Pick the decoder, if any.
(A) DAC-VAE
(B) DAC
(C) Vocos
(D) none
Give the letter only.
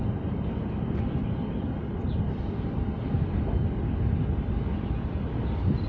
D